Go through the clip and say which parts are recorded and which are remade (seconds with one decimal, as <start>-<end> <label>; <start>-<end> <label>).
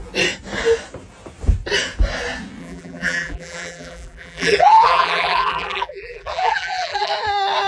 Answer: 0.0-2.6 recorded; 2.6-7.1 remade; 7.1-7.7 recorded